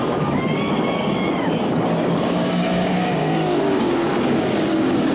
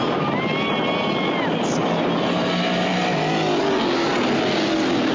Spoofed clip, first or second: first